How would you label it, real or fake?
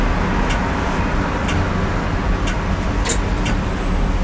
real